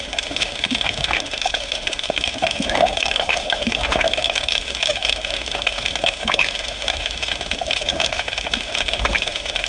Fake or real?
fake